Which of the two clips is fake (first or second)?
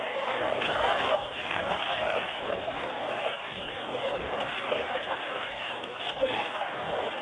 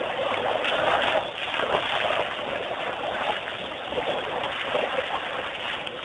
first